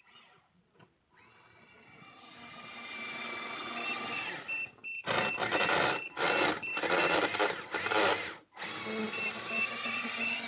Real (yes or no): yes